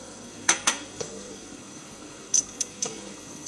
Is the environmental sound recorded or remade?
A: remade